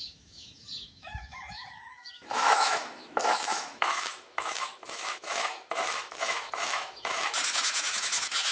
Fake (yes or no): yes